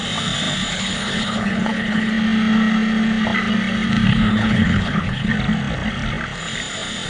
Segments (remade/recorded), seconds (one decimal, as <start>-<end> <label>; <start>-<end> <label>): 0.0-0.7 recorded; 0.7-2.1 remade; 2.1-4.1 recorded; 4.1-5.3 remade; 5.3-7.1 recorded